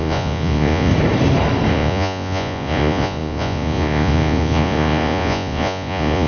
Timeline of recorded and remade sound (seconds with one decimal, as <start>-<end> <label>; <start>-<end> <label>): 0.0-0.9 remade; 0.9-1.7 recorded; 1.7-6.3 remade

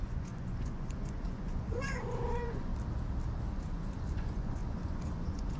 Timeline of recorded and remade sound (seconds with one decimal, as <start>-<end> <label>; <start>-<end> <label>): 0.0-2.7 remade; 2.7-3.5 recorded; 3.5-5.6 remade

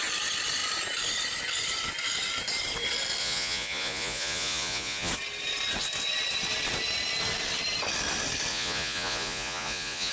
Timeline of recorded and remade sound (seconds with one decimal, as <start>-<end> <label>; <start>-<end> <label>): 0.0-3.2 recorded; 3.2-5.1 remade; 5.1-8.5 recorded; 8.5-10.1 remade

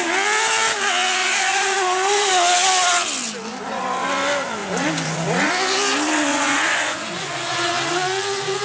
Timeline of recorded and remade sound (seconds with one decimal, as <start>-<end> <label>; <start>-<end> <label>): 0.0-1.2 recorded; 1.2-2.3 remade; 2.3-4.6 recorded; 4.6-5.5 remade; 5.5-6.3 recorded; 6.3-7.7 remade; 7.7-8.6 recorded